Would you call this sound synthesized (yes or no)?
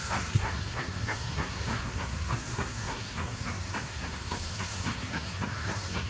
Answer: yes